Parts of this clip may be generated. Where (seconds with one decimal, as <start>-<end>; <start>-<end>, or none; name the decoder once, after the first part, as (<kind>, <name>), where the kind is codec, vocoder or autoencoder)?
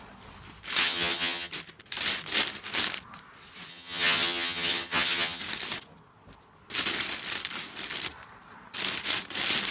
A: 0.8-1.5 (vocoder, HiFi-GAN); 3.7-5.4